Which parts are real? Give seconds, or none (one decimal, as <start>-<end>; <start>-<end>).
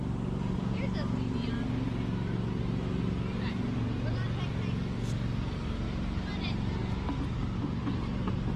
0.0-8.6